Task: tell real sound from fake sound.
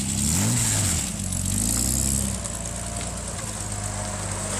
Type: real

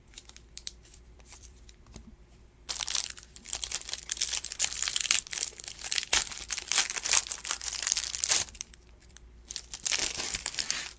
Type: fake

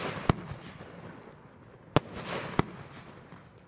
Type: real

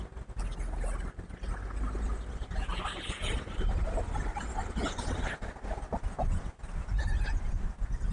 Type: real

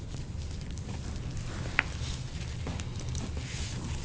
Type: real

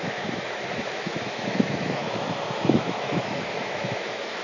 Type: fake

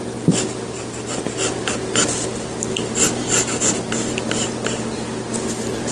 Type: real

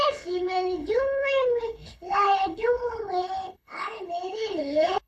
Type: fake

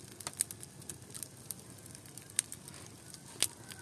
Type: real